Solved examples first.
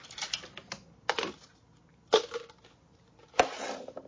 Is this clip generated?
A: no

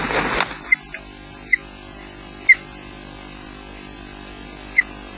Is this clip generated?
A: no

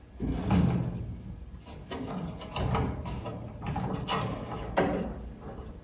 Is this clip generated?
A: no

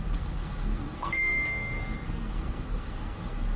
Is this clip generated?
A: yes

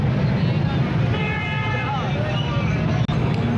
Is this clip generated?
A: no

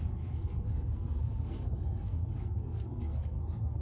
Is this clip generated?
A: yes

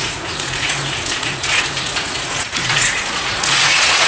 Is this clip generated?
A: yes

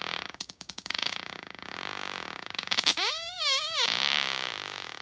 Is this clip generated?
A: yes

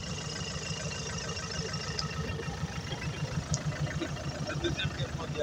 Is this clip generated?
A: no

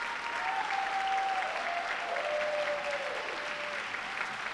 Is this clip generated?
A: no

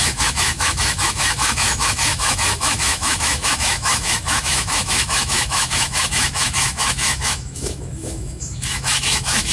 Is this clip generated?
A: yes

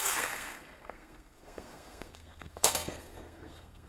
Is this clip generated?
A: yes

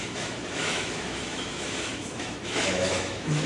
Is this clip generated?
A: yes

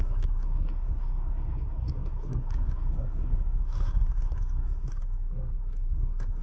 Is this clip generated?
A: yes